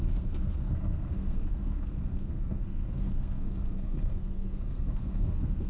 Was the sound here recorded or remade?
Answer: remade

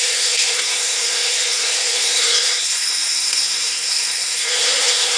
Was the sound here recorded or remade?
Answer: remade